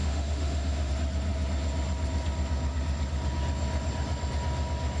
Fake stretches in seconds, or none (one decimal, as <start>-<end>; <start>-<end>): 0.0-0.9